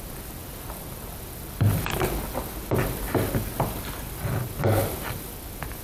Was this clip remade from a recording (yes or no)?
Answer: no